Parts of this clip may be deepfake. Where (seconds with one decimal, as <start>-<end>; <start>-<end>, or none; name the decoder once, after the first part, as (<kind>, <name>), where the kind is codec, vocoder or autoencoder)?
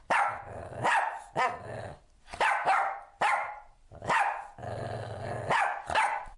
none